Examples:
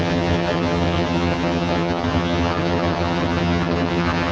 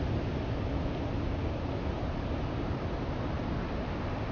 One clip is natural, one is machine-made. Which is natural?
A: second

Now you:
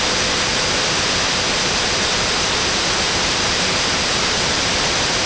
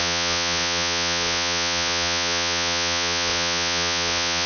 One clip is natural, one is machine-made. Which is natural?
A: first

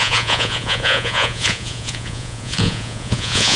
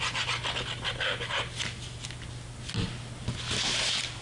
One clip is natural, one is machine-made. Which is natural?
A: second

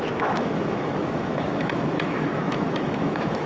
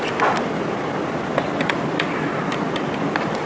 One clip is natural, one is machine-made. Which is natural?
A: second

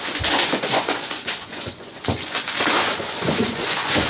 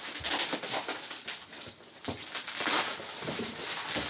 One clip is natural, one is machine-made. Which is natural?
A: second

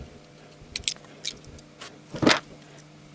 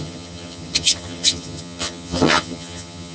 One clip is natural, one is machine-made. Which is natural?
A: first